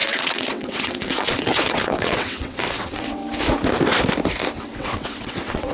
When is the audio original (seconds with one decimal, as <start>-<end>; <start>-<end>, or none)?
3.2-4.6